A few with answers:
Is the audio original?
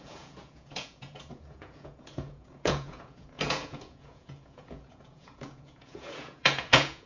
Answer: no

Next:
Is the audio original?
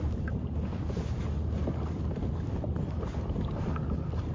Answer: yes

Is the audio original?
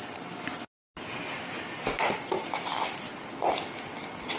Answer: yes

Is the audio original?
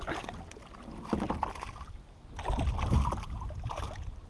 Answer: yes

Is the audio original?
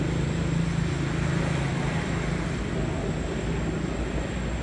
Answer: yes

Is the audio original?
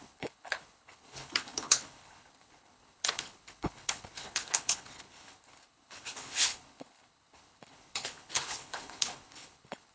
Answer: no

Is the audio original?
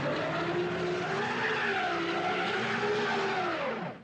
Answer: yes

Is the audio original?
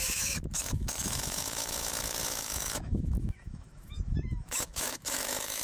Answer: no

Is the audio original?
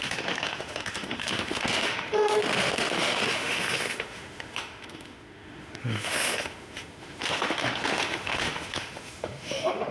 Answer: no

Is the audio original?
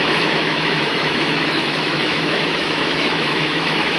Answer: no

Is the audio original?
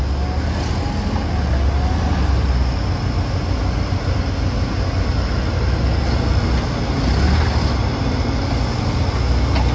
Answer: yes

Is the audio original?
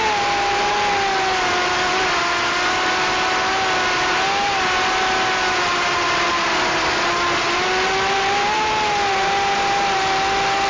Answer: yes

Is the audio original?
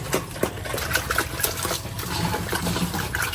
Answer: yes